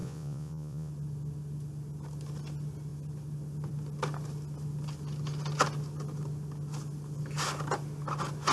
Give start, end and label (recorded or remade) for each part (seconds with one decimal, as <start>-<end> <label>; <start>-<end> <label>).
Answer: 0.0-0.9 remade; 0.9-8.5 recorded